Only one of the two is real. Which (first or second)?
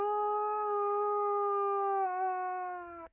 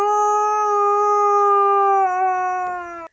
second